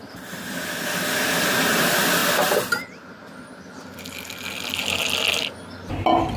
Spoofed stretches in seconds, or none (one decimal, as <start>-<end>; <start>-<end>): none